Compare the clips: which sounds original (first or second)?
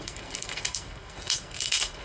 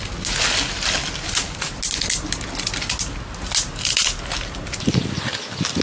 second